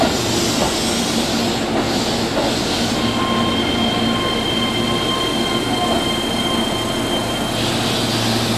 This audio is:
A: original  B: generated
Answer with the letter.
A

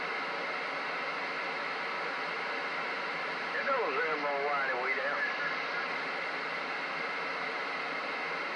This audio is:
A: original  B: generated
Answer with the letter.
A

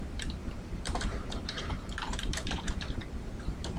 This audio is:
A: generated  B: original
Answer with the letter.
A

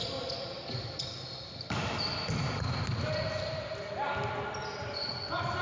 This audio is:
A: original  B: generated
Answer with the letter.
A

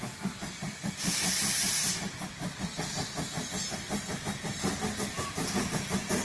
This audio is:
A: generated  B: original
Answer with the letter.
B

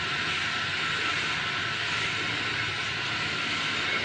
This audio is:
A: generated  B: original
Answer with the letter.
B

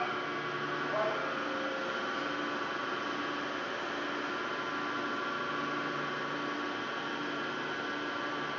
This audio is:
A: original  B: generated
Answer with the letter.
A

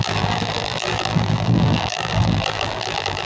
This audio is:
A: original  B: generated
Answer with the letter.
B